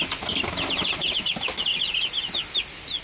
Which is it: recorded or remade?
recorded